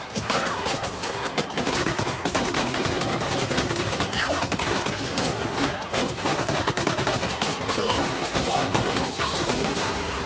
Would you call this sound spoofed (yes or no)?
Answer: yes